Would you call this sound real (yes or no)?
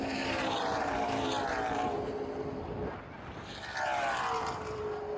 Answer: yes